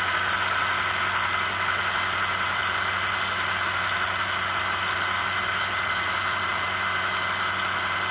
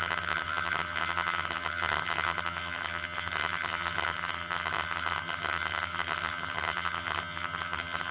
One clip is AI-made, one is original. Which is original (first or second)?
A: first